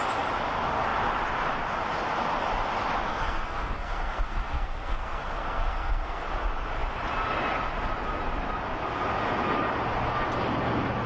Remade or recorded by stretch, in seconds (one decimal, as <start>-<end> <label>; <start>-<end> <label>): 0.0-3.1 recorded; 3.1-6.2 remade; 6.2-11.1 recorded